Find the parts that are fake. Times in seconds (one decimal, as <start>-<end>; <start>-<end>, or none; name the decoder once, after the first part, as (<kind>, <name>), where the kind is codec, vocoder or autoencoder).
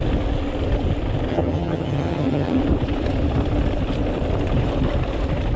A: 1.3-2.6 (vocoder, HiFi-GAN)